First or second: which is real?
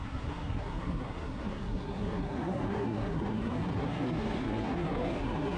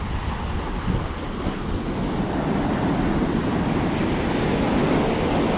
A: second